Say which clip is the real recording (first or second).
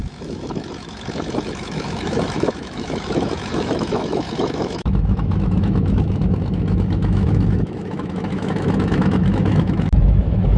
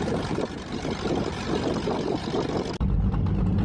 second